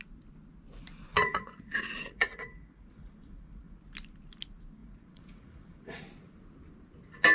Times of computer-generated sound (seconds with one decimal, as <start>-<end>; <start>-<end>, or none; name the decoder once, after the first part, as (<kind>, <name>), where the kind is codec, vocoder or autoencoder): 1.1-3.8 (vocoder, Vocos); 4.8-6.0